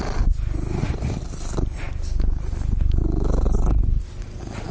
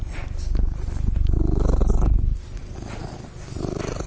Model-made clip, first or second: second